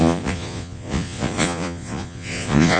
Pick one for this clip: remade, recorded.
remade